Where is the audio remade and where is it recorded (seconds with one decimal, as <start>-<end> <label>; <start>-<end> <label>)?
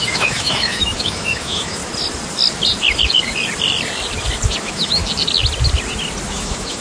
0.0-1.8 remade; 1.8-4.6 recorded; 4.6-5.0 remade; 5.0-6.3 recorded; 6.3-6.8 remade